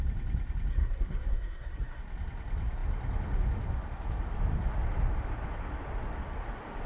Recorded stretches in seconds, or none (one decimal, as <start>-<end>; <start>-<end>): 0.0-0.7; 2.0-6.9